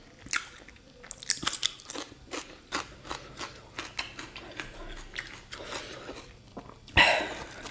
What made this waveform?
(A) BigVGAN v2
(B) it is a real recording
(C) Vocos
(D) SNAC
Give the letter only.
B